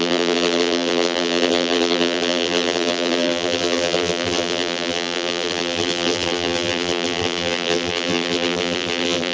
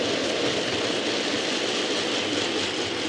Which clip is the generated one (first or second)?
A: first